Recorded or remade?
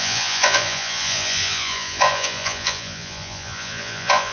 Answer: remade